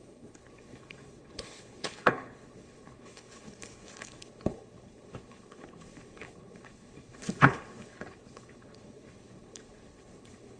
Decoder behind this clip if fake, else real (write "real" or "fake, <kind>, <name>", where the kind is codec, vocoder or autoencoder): fake, codec, HILCodec